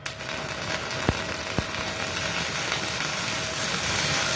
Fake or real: real